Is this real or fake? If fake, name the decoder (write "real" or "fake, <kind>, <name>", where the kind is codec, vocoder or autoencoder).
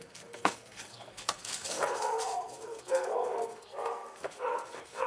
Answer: fake, codec, SNAC